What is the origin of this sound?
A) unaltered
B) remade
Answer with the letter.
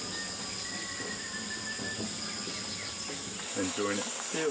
A